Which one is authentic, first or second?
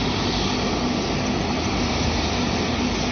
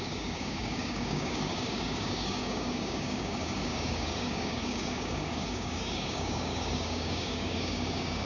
first